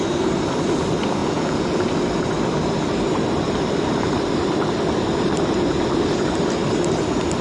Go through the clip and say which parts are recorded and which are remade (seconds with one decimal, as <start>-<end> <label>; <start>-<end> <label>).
0.0-1.2 recorded; 1.2-1.8 remade; 1.8-7.4 recorded